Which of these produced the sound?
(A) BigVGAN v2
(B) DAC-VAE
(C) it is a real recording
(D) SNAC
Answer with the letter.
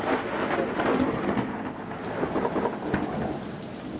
C